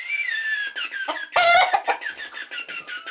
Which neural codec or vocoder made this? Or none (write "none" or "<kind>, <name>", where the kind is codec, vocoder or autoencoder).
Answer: none